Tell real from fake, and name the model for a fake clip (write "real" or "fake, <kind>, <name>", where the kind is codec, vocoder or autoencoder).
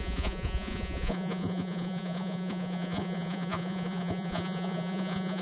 fake, vocoder, Vocos